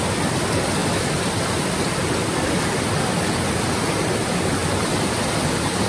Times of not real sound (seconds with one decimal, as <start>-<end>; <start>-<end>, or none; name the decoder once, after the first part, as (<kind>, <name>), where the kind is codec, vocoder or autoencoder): none